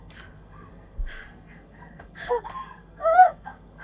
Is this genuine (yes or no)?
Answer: no